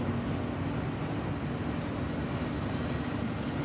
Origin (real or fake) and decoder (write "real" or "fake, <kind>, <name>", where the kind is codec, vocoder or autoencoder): real